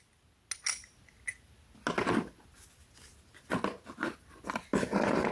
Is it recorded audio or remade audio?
recorded